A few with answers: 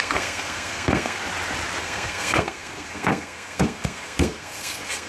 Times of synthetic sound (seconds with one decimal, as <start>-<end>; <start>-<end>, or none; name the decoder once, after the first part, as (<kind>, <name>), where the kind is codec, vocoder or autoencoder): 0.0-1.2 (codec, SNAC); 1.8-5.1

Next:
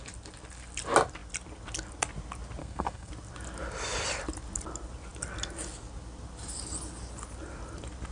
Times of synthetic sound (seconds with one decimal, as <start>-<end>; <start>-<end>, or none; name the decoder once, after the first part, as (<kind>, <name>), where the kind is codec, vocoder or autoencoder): 2.6-3.1 (codec, SNAC)

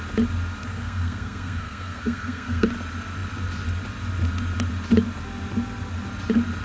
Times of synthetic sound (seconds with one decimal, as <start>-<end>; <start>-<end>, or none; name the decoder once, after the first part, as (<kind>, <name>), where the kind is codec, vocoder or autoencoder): 0.6-2.7 (codec, SNAC)

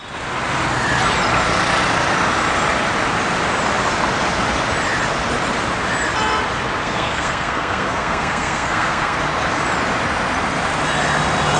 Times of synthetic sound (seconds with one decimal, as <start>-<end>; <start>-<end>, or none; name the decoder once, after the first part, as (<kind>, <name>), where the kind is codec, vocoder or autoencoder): 6.8-9.2 (codec, SNAC)

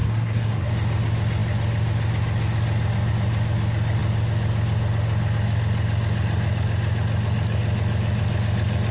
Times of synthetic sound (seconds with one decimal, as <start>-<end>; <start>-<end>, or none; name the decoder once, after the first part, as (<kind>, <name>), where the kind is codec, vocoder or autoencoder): 0.0-0.7 (codec, SNAC)

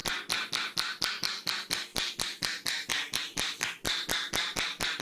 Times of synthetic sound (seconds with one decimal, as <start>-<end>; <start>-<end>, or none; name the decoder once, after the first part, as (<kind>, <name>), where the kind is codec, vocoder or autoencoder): none